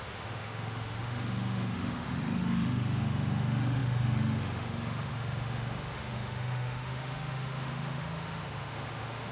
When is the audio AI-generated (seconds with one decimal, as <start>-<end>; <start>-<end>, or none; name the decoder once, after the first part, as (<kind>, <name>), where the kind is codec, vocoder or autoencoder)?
0.0-9.3 (autoencoder, DAC-VAE)